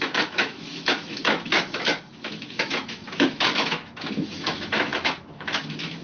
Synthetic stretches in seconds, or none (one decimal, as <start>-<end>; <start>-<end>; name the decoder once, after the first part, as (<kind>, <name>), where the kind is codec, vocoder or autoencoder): 0.0-6.0 (autoencoder, DAC-VAE)